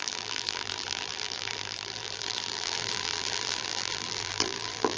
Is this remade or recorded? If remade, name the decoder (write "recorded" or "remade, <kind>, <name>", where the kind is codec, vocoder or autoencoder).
remade, vocoder, BigVGAN v2